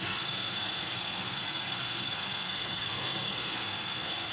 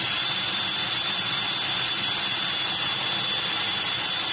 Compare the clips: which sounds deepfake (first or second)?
first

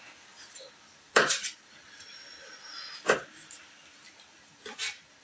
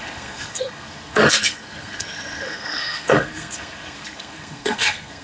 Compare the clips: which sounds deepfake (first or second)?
second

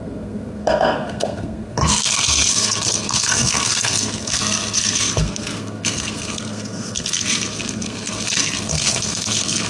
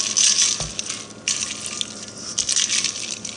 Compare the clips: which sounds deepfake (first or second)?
first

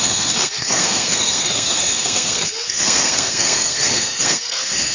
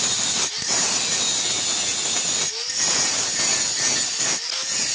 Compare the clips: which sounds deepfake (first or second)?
first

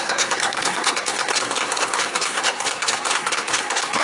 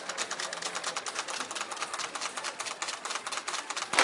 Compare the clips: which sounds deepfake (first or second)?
first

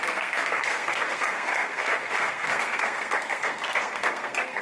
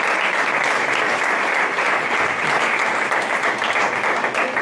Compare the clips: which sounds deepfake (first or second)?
first